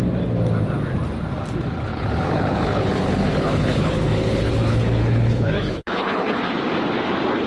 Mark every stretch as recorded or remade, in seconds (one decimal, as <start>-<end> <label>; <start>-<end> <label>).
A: 0.0-1.9 recorded; 1.9-6.4 remade; 6.4-7.5 recorded

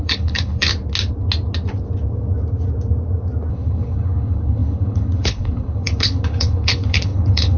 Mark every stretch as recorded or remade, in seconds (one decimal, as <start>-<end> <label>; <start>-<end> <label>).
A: 0.0-0.7 remade; 0.7-3.5 recorded; 3.5-7.6 remade

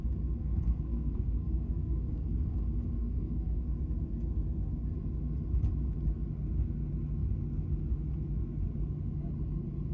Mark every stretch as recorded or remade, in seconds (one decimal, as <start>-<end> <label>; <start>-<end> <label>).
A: 0.0-0.4 recorded; 0.4-2.5 remade; 2.5-3.0 recorded; 3.0-3.8 remade; 3.8-9.9 recorded